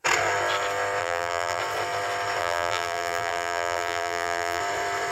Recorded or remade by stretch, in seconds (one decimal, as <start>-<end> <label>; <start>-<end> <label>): 0.0-1.0 recorded; 1.0-1.6 remade; 1.6-2.4 recorded; 2.4-4.6 remade; 4.6-5.1 recorded